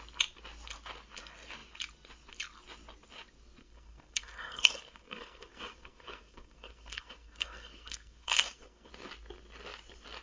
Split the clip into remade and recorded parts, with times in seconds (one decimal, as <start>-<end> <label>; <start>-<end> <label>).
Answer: 0.0-3.6 recorded; 3.6-8.9 remade; 8.9-10.2 recorded